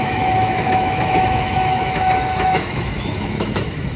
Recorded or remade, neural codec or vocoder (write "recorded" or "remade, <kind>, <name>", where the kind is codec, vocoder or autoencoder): remade, autoencoder, DAC-VAE